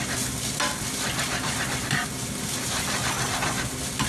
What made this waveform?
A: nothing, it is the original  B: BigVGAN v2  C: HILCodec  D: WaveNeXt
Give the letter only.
A